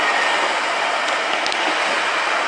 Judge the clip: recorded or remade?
recorded